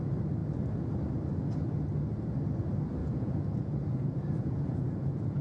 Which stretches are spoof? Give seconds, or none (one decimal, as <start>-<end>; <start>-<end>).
3.0-5.4